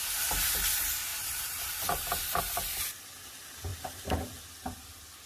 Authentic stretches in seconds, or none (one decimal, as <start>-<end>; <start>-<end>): 0.0-1.1; 2.4-3.7; 4.4-5.3